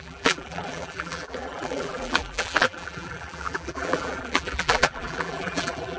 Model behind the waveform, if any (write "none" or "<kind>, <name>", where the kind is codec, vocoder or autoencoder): vocoder, BigVGAN v2